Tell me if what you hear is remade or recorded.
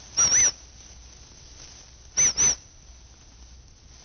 recorded